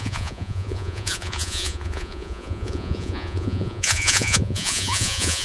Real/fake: fake